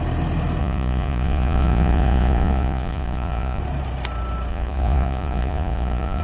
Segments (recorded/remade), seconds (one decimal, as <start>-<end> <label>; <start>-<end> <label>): 0.0-0.6 recorded; 0.6-3.6 remade; 3.6-4.5 recorded; 4.5-6.2 remade